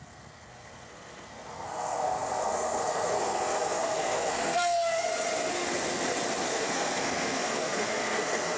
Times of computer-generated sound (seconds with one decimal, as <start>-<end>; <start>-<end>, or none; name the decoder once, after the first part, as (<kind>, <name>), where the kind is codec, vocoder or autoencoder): 0.0-5.1 (codec, SNAC); 6.5-8.6